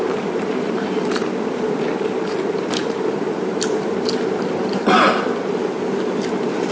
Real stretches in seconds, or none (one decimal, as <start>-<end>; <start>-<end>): 1.2-2.1